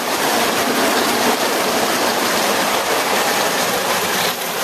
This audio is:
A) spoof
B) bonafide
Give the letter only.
A